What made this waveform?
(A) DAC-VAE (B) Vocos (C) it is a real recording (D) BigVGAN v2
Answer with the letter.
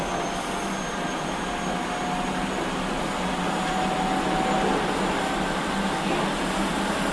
C